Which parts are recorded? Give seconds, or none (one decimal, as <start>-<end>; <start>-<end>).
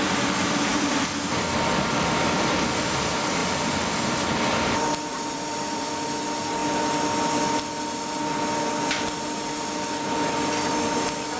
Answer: 0.0-0.7; 1.3-5.1; 5.9-11.4